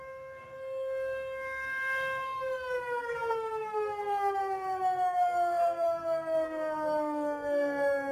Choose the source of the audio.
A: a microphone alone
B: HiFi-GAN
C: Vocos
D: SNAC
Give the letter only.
D